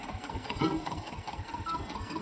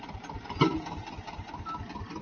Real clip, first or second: second